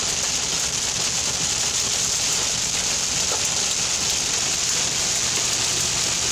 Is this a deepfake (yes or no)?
no